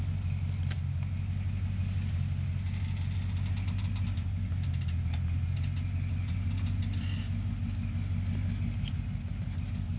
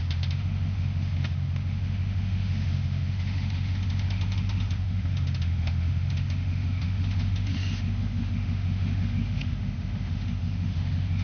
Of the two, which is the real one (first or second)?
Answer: first